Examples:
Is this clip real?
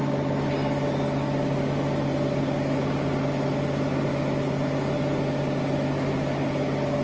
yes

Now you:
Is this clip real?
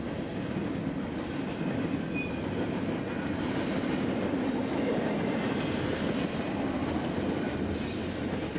yes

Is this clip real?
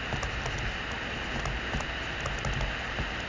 yes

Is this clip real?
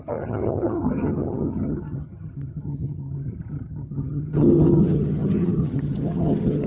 no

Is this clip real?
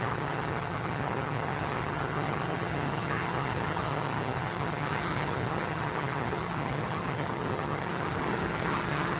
no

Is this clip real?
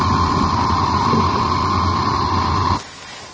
yes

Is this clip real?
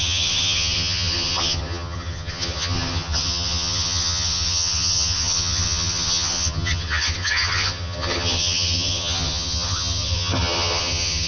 no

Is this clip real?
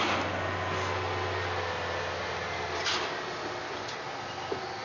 yes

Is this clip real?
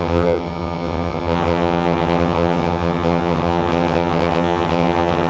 no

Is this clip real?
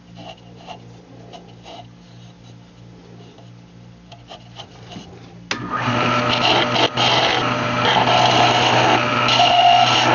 yes